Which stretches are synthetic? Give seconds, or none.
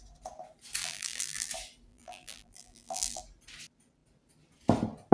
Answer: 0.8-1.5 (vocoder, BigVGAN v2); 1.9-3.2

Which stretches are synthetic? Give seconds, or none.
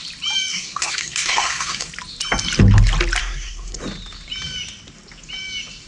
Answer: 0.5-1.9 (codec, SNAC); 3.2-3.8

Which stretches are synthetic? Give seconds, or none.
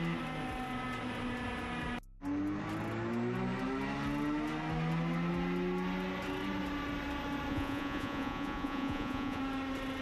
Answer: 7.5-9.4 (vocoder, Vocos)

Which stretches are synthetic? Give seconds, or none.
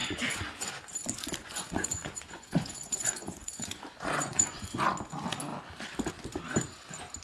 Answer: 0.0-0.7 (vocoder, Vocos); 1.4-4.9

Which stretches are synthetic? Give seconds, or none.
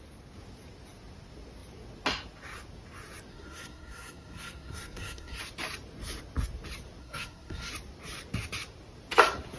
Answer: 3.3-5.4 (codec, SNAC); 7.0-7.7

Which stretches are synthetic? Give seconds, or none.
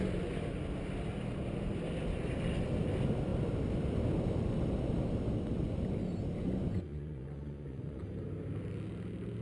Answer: 6.4-8.0 (vocoder, Vocos)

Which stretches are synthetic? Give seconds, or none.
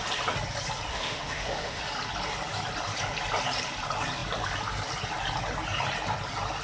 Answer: 0.9-1.8 (autoencoder, DAC-VAE)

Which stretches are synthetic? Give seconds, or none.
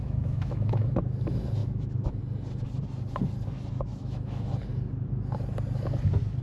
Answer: 0.0-1.0 (autoencoder, DAC-VAE); 1.6-2.2; 3.9-4.5